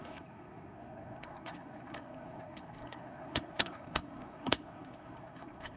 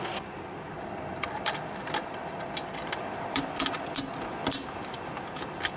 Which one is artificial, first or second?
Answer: first